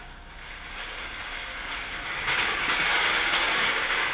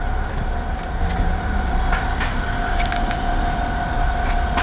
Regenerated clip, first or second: first